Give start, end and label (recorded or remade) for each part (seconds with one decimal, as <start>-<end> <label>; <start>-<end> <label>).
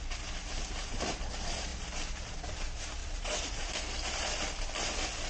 0.0-3.0 recorded; 3.0-3.7 remade; 3.7-5.3 recorded